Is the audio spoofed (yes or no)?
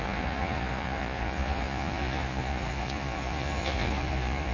yes